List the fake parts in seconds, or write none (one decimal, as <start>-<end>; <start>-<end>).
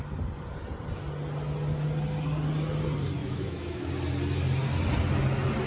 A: 3.2-3.9